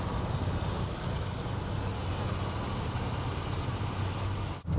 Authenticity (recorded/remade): recorded